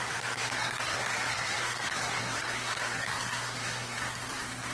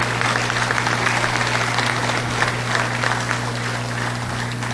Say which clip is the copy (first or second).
first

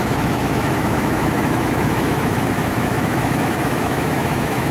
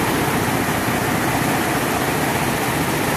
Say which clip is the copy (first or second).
first